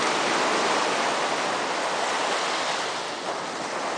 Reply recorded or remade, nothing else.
recorded